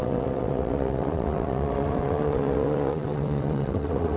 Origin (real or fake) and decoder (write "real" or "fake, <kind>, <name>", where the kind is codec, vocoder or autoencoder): fake, vocoder, WaveNeXt